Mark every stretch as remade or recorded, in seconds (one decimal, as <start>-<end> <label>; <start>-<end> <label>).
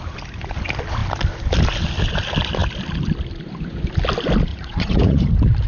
0.0-4.5 recorded; 4.5-5.3 remade; 5.3-5.7 recorded